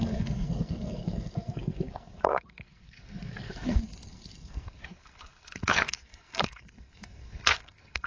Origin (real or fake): fake